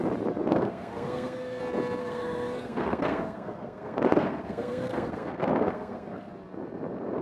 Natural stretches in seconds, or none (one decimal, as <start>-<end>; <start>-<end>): 0.0-0.5; 1.6-2.0; 6.3-7.2